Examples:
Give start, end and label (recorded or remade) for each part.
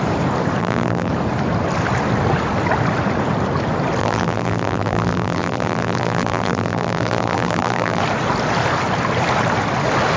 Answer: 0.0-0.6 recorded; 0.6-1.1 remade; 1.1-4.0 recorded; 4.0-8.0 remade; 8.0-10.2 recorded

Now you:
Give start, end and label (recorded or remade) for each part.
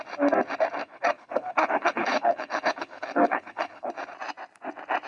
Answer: 0.0-0.8 recorded; 0.8-3.9 remade; 3.9-5.1 recorded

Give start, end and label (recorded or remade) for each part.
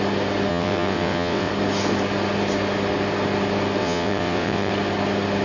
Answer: 0.0-0.5 recorded; 0.5-1.5 remade; 1.5-3.8 recorded; 3.8-4.7 remade; 4.7-5.4 recorded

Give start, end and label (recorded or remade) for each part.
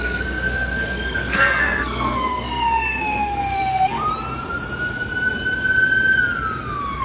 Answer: 0.0-4.1 remade; 4.1-7.0 recorded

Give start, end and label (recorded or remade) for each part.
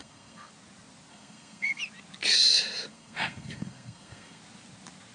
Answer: 0.0-0.5 remade; 0.5-1.1 recorded; 1.1-1.8 remade; 1.8-2.9 recorded; 2.9-4.4 remade; 4.4-5.1 recorded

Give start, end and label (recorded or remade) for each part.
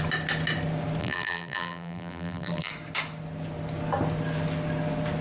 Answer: 0.0-1.0 recorded; 1.0-2.7 remade; 2.7-5.2 recorded